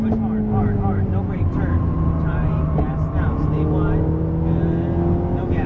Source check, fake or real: real